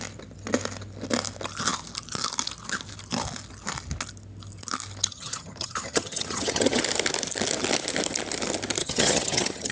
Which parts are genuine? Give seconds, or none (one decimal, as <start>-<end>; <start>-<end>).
0.0-5.1; 6.8-8.8